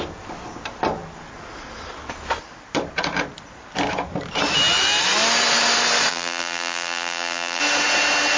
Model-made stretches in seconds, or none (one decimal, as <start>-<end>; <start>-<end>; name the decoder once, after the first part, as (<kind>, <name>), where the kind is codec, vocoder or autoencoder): 6.1-7.6 (vocoder, BigVGAN v2)